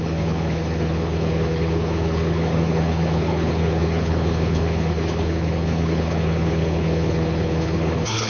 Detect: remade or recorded remade